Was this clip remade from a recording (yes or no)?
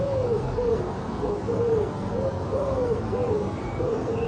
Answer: yes